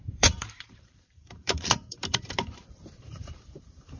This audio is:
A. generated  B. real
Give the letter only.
A